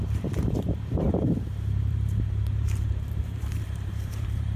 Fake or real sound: fake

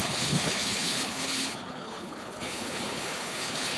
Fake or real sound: fake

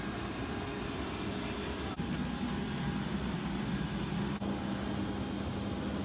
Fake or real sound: real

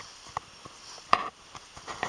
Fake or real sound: real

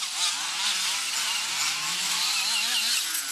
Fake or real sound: real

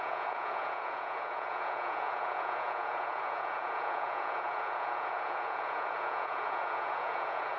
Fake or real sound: fake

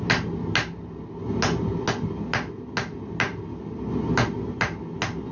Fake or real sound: real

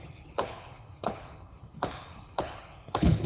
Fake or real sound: fake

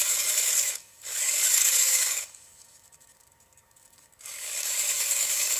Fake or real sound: fake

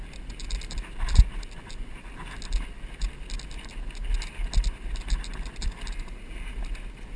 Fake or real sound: real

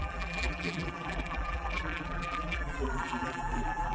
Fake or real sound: fake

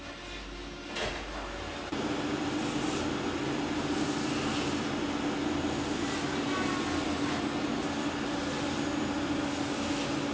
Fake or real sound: real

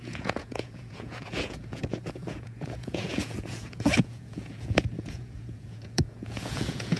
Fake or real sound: fake